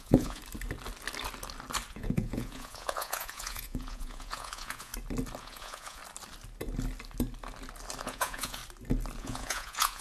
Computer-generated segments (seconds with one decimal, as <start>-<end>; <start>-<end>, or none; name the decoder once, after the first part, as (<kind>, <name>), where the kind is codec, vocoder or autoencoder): 0.0-0.4 (vocoder, Vocos); 1.9-4.9; 5.4-6.0; 8.0-8.6; 9.2-10.0